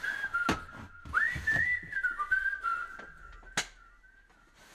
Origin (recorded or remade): recorded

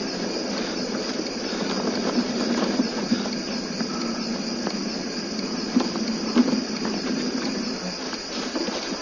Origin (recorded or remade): recorded